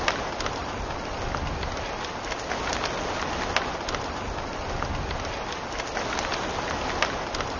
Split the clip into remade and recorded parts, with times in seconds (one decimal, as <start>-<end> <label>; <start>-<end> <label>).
0.0-0.6 recorded; 0.6-2.7 remade; 2.7-7.6 recorded